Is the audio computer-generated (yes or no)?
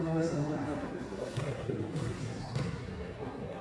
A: yes